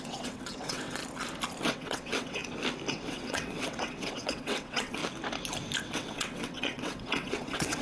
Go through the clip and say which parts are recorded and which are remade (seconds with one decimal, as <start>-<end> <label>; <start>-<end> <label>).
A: 0.0-1.0 remade; 1.0-1.6 recorded; 1.6-2.4 remade; 2.4-2.9 recorded; 2.9-5.0 remade; 5.0-5.8 recorded; 5.8-7.8 remade